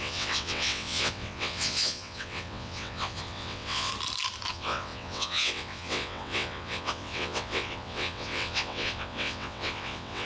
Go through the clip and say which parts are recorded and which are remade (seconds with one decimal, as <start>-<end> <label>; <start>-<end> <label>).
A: 0.0-3.9 remade; 3.9-4.5 recorded; 4.5-10.3 remade